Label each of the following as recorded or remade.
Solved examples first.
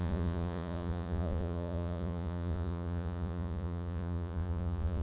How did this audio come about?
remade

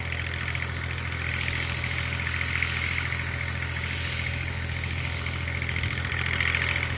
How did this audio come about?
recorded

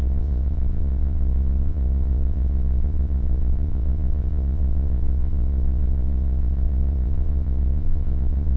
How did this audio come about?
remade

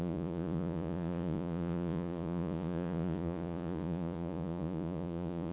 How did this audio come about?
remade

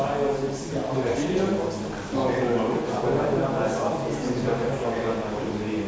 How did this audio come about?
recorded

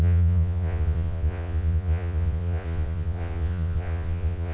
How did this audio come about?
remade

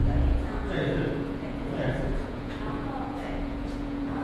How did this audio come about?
remade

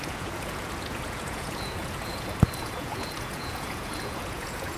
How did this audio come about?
remade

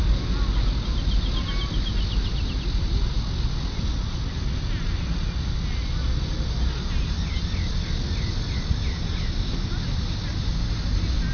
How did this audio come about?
recorded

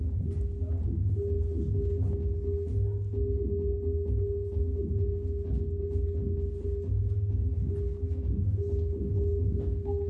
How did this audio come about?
recorded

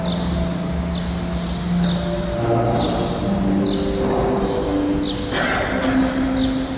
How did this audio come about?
recorded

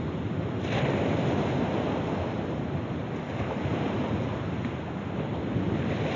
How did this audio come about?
recorded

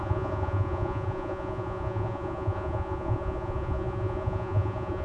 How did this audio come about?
remade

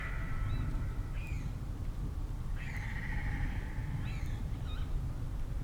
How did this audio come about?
recorded